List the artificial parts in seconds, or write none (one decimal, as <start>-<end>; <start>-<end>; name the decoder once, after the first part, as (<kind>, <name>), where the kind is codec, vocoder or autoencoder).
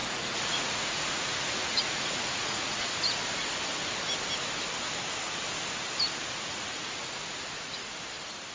0.0-2.9 (vocoder, Vocos); 6.2-7.8